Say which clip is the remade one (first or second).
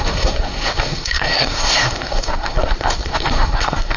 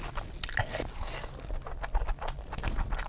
first